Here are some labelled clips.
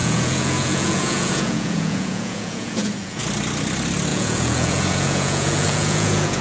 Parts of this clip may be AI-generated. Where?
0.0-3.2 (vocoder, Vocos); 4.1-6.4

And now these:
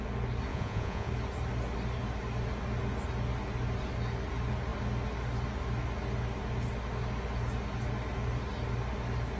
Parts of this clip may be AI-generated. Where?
0.5-1.1 (vocoder, Vocos)